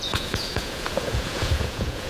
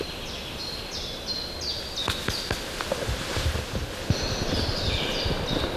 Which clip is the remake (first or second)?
first